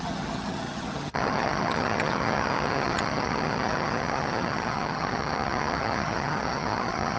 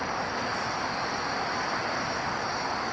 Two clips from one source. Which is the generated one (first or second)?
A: first